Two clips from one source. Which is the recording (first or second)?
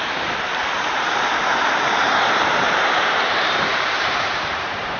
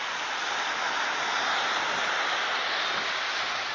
second